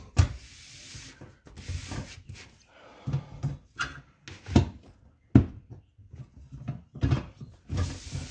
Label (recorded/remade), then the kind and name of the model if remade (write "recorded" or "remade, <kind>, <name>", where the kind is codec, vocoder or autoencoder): recorded